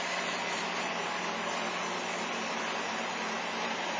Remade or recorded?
recorded